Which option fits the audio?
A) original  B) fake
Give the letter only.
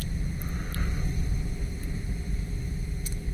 A